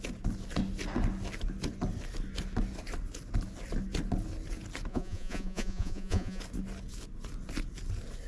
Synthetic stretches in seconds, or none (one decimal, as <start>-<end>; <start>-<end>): 4.9-6.4